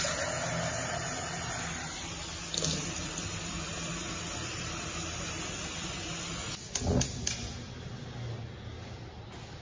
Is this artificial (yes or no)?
no